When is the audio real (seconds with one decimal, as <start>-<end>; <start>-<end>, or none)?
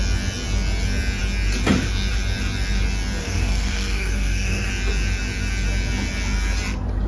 0.0-3.2; 4.7-7.1